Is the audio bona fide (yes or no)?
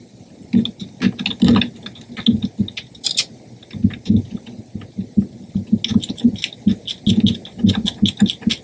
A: yes